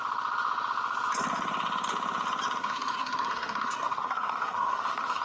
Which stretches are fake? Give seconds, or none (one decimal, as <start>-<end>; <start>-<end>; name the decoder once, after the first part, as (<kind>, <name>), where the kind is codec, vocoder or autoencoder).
2.6-5.2 (codec, SNAC)